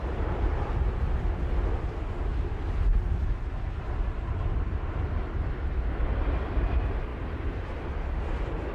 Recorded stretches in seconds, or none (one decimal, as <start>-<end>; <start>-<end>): 2.3-5.9; 7.1-8.2